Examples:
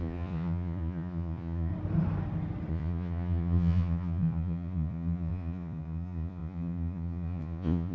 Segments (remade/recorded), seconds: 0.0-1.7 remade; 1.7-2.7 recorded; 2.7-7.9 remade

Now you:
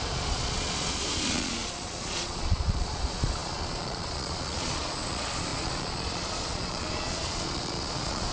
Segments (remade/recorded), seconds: 0.0-8.3 remade

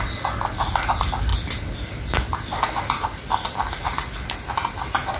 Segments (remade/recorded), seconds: 0.0-5.2 recorded